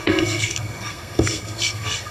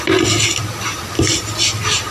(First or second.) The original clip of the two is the second